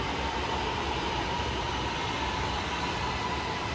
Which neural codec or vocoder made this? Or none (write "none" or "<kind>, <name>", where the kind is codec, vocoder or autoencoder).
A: none